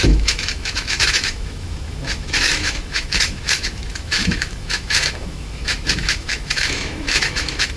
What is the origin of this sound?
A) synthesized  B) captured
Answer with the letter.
A